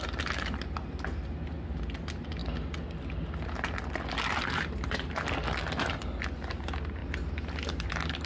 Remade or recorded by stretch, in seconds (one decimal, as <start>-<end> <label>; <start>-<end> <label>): 0.0-8.3 recorded